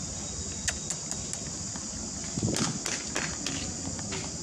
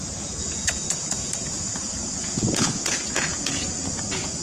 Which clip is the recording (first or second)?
first